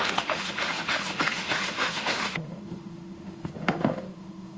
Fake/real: fake